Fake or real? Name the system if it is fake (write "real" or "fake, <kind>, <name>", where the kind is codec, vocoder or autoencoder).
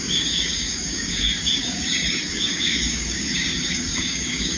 fake, codec, DAC